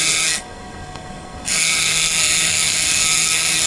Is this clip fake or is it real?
fake